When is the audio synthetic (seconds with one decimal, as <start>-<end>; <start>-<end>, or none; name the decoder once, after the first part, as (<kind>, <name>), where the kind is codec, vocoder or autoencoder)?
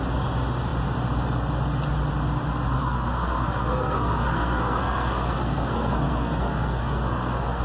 2.8-7.6 (codec, SNAC)